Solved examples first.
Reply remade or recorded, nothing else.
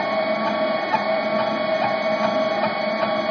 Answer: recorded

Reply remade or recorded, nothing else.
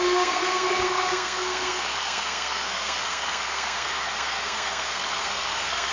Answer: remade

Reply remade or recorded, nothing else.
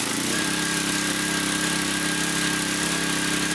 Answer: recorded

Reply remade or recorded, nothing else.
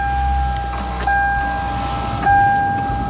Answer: recorded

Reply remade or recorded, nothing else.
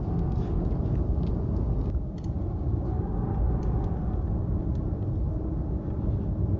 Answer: recorded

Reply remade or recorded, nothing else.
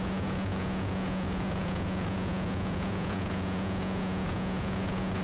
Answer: remade